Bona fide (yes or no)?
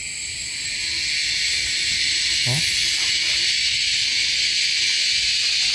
yes